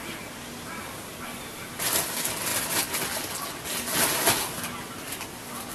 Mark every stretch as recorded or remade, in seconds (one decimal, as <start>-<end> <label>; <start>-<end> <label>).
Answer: 0.0-5.7 recorded